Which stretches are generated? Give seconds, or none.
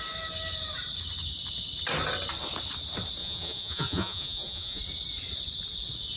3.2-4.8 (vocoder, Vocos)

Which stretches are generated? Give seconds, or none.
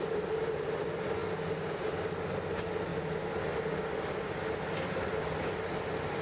none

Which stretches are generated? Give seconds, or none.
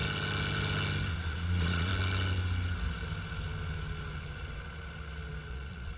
1.1-1.9 (vocoder, Vocos); 5.5-6.0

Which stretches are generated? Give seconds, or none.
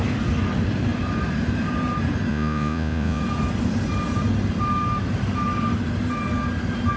2.3-3.2 (vocoder, Vocos)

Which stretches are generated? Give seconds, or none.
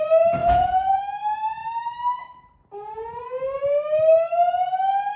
0.4-1.0 (vocoder, Vocos)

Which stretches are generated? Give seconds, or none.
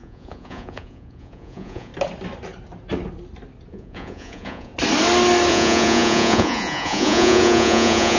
0.0-1.9 (vocoder, Vocos); 3.7-4.7; 5.5-8.2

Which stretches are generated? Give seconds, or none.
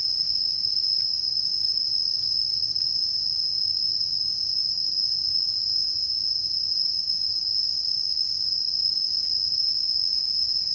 0.0-3.0 (vocoder, Vocos); 7.7-9.1